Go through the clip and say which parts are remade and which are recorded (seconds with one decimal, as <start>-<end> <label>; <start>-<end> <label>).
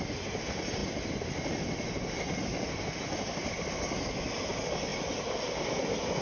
0.0-6.2 recorded